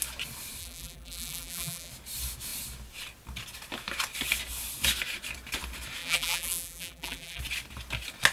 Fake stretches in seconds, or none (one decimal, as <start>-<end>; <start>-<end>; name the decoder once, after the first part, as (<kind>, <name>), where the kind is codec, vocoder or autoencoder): 0.6-1.9 (vocoder, BigVGAN v2); 6.0-7.4